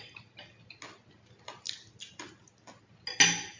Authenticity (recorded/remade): recorded